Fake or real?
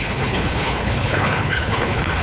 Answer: fake